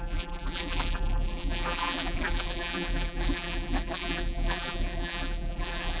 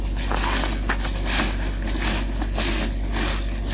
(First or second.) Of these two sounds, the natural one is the second